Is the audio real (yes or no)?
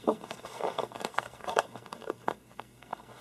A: no